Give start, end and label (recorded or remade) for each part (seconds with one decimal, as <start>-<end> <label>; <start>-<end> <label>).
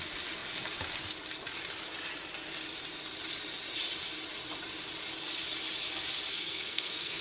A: 0.0-6.3 recorded; 6.3-7.2 remade